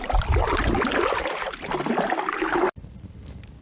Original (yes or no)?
yes